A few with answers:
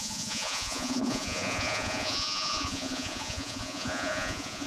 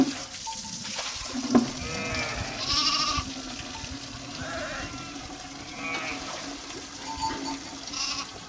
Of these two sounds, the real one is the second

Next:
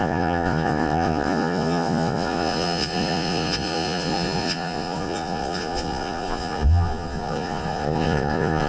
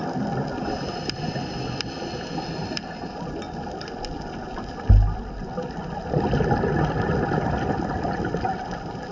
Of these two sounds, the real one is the second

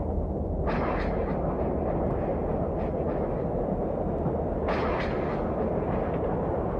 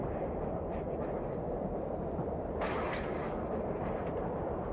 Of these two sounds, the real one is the first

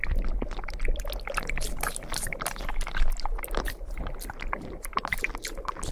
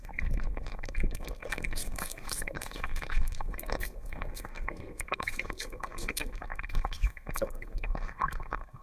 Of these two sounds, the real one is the first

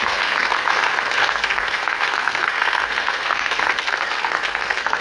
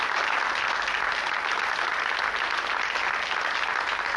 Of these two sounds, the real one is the second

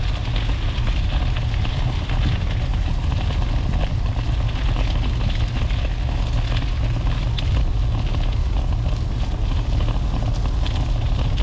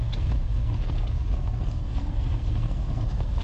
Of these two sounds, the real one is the first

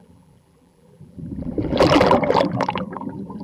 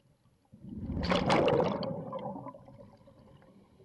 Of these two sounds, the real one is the second